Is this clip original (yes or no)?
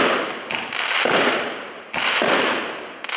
yes